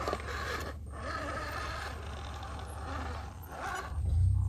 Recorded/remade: recorded